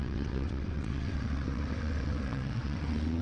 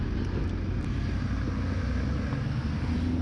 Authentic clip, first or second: second